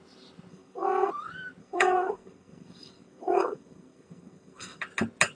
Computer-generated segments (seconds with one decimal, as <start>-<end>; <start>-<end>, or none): 0.5-1.1; 1.6-4.8